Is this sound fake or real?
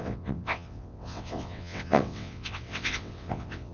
fake